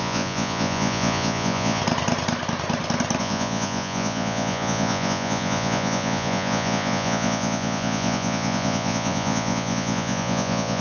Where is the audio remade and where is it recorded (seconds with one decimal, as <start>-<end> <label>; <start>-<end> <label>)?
0.0-1.8 remade; 1.8-3.2 recorded; 3.2-10.8 remade

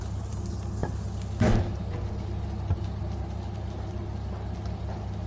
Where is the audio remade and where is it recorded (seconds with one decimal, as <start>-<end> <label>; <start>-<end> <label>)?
0.0-5.3 recorded

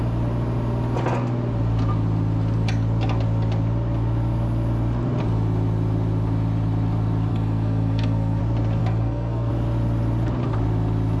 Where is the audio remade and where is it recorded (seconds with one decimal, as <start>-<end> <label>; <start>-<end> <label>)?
0.0-7.3 recorded; 7.3-8.4 remade; 8.4-8.8 recorded; 8.8-9.5 remade; 9.5-11.2 recorded

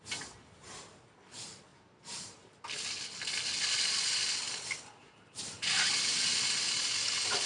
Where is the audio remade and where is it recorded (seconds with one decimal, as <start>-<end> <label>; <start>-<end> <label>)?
0.0-1.7 recorded; 1.7-2.6 remade; 2.6-5.0 recorded; 5.0-5.9 remade; 5.9-7.5 recorded

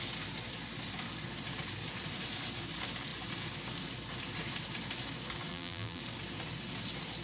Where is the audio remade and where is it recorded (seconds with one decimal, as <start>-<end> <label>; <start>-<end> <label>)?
0.0-5.5 recorded; 5.5-6.0 remade; 6.0-7.2 recorded

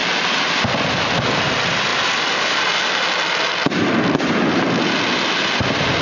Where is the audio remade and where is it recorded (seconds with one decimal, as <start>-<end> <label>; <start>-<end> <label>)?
0.0-6.0 recorded

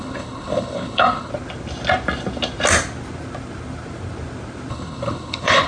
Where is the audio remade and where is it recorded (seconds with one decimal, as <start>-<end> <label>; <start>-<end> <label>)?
0.0-1.3 remade; 1.3-4.7 recorded; 4.7-5.7 remade

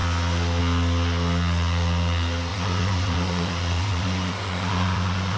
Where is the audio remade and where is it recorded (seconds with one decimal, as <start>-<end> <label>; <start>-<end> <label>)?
0.0-2.5 recorded; 2.5-5.4 remade